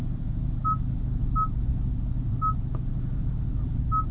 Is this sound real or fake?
real